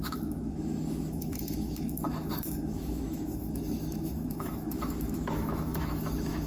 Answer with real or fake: fake